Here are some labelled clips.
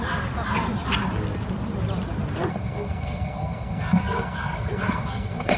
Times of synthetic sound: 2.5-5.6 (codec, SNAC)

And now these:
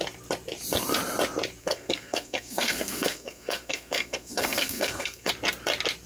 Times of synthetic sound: 1.6-5.3 (codec, SNAC)

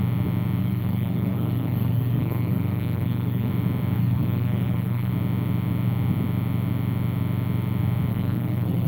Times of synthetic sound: 0.6-3.5 (codec, SNAC); 4.0-5.1; 8.1-8.9

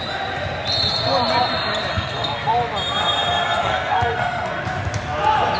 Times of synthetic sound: 1.9-2.5 (codec, SNAC); 3.6-4.6

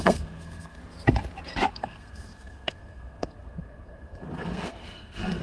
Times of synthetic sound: 0.0-0.8 (codec, SNAC); 1.7-5.4

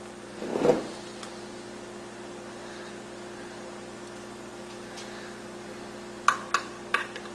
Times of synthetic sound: none